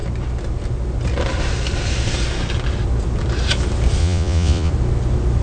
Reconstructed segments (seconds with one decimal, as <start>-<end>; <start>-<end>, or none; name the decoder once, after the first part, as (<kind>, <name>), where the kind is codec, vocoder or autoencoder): 4.0-4.7 (vocoder, Vocos)

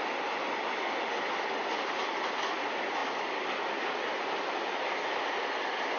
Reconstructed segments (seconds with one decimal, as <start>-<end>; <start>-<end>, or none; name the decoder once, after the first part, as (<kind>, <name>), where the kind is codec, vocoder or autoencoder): none

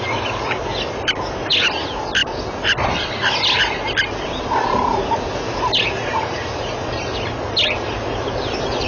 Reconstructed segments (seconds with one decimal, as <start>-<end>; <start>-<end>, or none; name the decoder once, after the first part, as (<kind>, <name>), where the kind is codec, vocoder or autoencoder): none

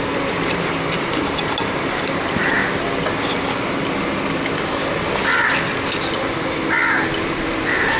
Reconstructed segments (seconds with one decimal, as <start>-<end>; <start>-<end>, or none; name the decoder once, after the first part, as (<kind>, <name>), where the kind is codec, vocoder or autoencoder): 0.0-2.6 (vocoder, BigVGAN v2); 7.2-8.0

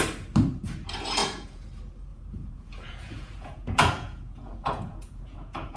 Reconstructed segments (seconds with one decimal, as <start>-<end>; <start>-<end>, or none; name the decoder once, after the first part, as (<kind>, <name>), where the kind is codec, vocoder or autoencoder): 1.2-1.7 (vocoder, Vocos); 2.1-5.8

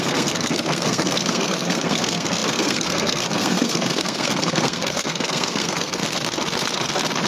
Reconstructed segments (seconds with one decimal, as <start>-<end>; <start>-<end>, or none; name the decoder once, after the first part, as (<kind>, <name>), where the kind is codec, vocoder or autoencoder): 0.0-6.0 (codec, SNAC)